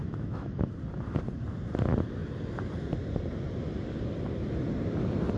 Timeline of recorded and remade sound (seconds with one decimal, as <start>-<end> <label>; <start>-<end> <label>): 0.0-0.7 remade; 0.7-5.4 recorded